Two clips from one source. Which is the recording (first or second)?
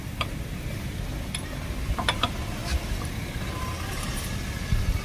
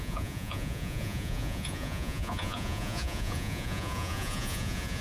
first